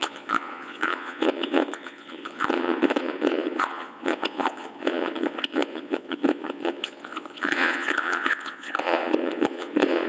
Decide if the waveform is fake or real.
fake